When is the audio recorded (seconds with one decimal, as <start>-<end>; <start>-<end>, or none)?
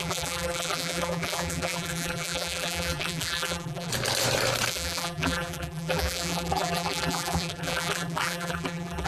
3.9-4.7